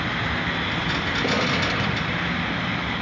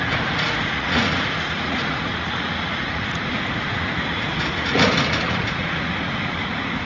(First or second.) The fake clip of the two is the second